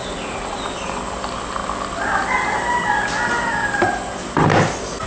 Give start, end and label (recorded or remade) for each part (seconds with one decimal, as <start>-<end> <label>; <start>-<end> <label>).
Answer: 0.0-0.6 remade; 0.6-5.1 recorded